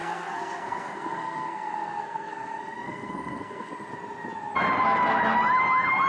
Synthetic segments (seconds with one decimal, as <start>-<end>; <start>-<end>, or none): 0.0-3.7